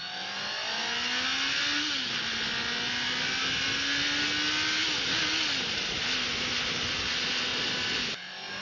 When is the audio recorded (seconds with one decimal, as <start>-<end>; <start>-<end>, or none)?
0.0-8.6